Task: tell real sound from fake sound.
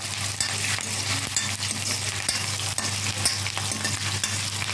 real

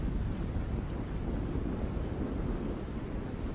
real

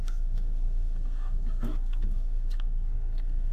fake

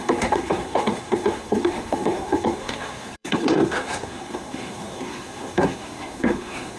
fake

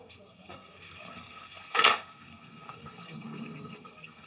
fake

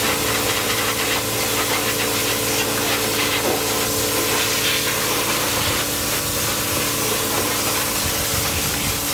real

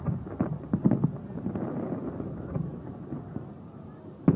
real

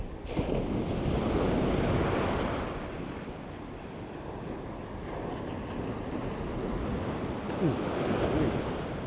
real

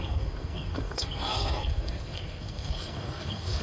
fake